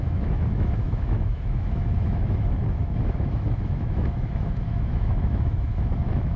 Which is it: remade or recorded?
remade